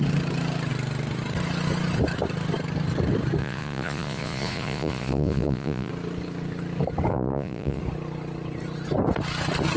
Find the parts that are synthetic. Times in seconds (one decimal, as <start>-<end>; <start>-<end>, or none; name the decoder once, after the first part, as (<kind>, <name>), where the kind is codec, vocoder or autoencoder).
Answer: 3.4-5.9 (vocoder, Vocos); 7.1-7.8